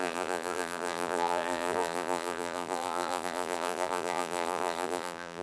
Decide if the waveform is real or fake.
fake